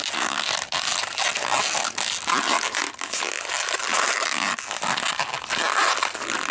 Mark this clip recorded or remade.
recorded